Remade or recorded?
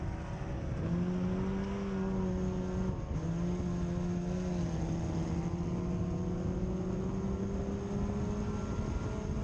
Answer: recorded